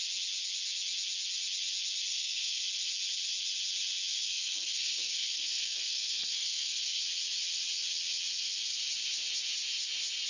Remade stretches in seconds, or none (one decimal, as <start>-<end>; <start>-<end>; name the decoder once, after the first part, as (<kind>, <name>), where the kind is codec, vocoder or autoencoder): 2.1-2.6 (codec, SNAC); 4.1-7.0